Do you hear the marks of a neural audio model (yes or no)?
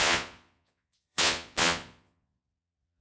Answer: yes